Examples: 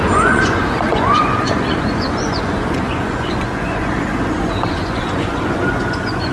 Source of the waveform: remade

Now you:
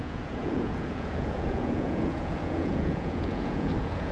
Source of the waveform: remade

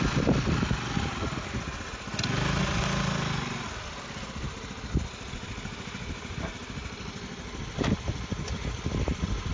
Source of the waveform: recorded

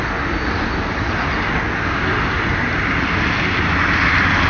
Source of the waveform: recorded